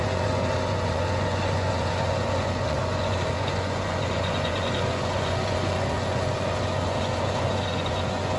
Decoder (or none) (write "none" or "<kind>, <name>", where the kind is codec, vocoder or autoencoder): vocoder, Vocos